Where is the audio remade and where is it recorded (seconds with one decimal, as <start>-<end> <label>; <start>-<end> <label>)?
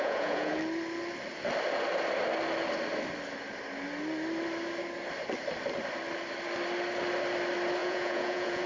0.0-0.6 remade; 0.6-7.8 recorded; 7.8-8.7 remade